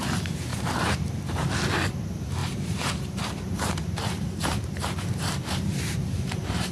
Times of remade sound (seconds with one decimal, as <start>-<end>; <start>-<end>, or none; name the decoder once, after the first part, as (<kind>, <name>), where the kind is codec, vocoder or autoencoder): 0.5-1.2 (vocoder, BigVGAN v2); 2.4-6.7